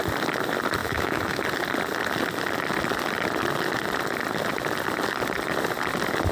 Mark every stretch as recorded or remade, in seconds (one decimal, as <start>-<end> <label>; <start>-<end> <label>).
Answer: 0.0-0.8 recorded; 0.8-1.4 remade; 1.4-6.3 recorded